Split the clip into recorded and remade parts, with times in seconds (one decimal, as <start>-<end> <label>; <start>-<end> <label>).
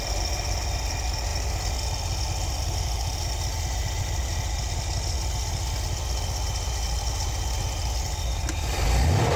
0.0-9.4 recorded